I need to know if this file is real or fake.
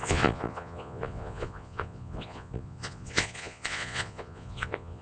fake